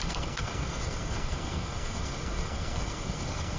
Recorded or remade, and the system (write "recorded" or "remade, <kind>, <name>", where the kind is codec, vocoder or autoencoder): remade, codec, SNAC